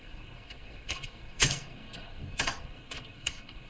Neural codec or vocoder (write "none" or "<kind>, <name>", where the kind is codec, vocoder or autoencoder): codec, SNAC